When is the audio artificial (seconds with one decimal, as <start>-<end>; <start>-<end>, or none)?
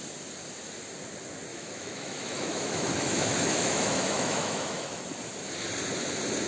1.5-5.0